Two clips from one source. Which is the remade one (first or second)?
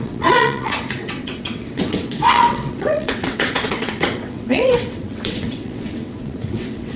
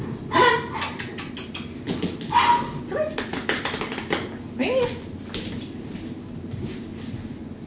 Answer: first